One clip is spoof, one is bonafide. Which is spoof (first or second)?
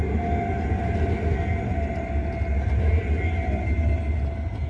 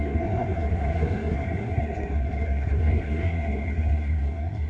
second